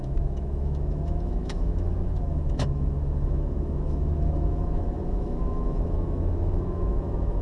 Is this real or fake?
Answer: fake